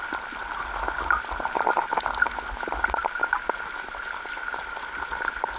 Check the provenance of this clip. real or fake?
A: real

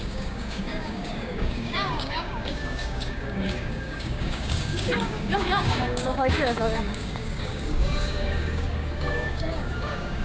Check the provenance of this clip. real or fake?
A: fake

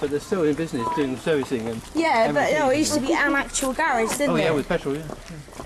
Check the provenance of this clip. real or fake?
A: real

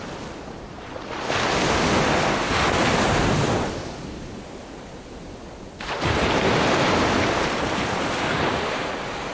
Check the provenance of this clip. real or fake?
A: real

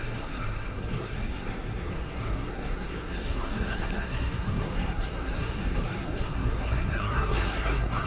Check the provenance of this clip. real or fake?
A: fake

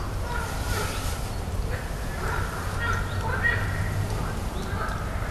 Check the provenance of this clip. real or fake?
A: real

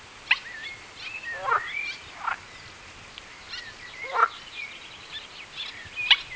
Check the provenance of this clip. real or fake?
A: real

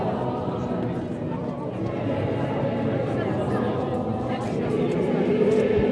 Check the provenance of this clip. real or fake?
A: real